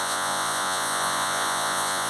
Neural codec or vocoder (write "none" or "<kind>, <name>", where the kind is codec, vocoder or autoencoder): vocoder, Vocos